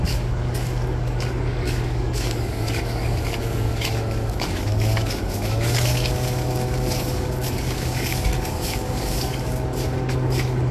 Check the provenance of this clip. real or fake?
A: fake